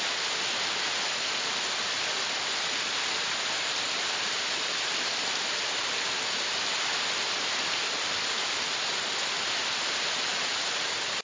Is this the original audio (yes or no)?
yes